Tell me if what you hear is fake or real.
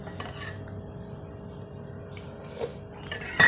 real